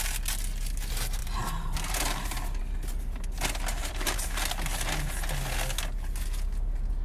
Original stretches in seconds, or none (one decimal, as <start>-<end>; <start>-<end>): 0.0-1.2; 2.6-3.7; 4.5-7.0